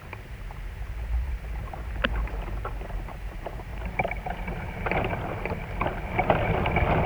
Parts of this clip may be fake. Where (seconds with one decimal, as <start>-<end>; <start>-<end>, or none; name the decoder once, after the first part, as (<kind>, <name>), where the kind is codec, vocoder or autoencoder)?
3.7-4.3 (vocoder, BigVGAN v2)